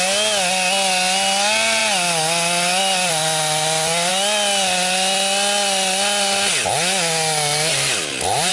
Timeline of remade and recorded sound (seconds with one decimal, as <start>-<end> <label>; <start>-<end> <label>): 0.0-8.5 recorded